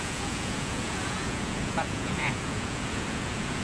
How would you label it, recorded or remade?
remade